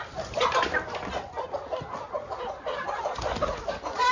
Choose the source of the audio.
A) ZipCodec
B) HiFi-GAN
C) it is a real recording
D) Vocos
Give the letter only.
C